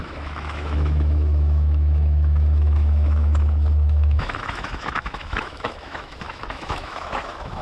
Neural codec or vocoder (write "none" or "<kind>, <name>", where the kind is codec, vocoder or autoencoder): autoencoder, DAC-VAE